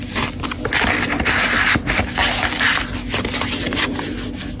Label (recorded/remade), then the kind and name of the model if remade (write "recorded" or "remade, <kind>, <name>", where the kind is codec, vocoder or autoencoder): recorded